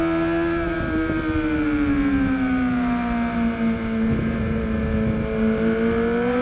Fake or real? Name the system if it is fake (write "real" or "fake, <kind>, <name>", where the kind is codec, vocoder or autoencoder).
real